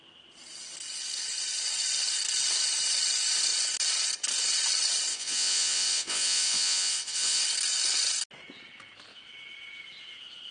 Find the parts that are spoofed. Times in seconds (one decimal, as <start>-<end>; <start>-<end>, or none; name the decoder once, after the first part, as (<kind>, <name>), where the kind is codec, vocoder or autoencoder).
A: 5.1-7.4 (vocoder, Vocos)